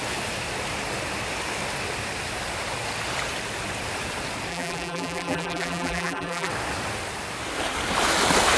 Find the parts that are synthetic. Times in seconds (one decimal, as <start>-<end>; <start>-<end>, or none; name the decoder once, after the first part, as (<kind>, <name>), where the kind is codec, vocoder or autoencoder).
4.5-6.5 (vocoder, BigVGAN v2)